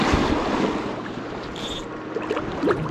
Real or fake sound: real